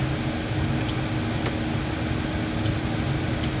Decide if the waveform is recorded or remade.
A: recorded